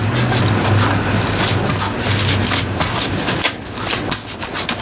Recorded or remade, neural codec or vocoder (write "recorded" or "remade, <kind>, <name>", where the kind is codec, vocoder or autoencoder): recorded